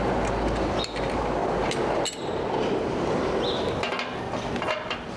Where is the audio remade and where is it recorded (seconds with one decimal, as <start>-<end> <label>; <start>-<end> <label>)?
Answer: 0.0-5.2 recorded